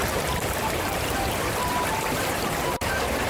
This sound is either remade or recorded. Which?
remade